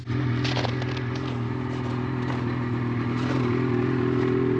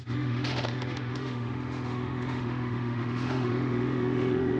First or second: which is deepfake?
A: second